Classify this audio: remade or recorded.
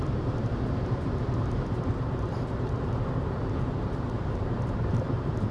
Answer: remade